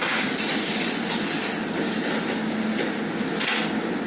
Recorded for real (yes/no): yes